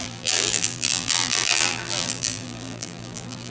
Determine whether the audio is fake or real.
fake